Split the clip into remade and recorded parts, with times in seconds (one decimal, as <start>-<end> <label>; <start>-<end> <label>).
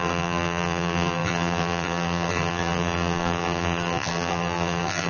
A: 0.0-5.1 remade